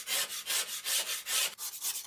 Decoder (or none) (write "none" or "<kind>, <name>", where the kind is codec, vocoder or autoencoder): vocoder, BigVGAN v2